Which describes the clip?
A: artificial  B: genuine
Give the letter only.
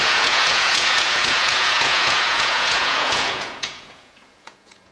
A